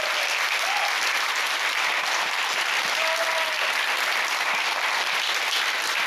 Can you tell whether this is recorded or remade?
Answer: recorded